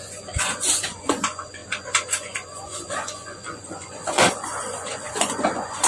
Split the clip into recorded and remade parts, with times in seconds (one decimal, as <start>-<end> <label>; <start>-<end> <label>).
0.0-5.9 remade